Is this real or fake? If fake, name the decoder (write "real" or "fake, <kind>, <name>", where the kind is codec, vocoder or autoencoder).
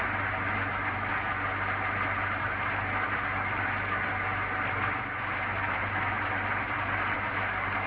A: real